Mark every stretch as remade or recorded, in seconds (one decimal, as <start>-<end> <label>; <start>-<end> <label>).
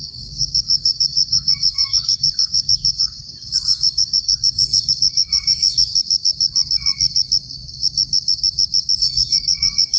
0.0-5.9 remade; 5.9-9.0 recorded; 9.0-10.0 remade